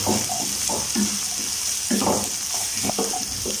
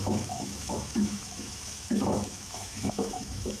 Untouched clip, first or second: first